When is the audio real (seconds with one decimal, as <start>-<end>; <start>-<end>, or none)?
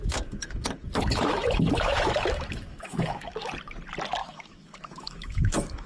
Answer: 3.5-4.2